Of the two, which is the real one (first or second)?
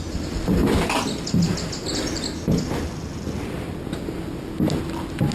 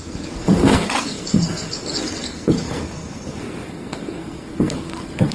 first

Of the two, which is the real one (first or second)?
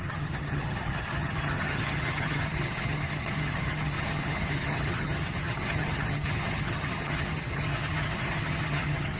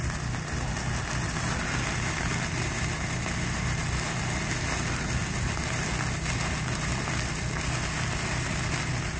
second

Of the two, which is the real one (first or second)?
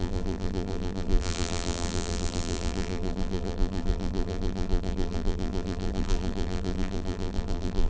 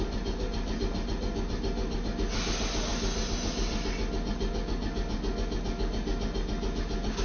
second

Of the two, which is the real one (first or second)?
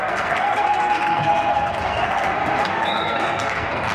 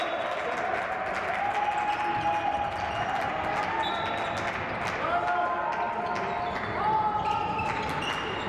second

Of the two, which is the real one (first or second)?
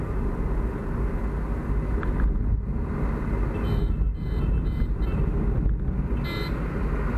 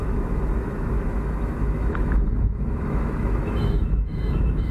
first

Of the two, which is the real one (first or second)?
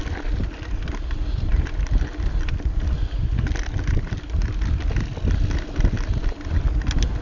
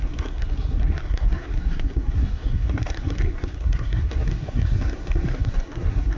first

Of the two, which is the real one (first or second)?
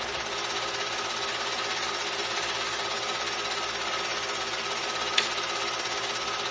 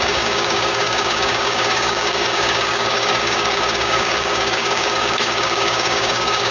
first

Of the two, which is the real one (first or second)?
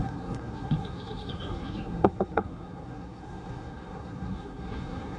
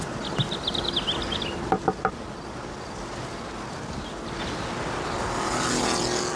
second